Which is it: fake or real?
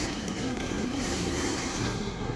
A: fake